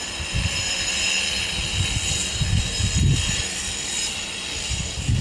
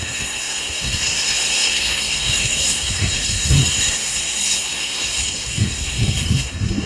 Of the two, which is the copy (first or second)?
second